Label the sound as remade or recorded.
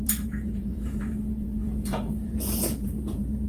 remade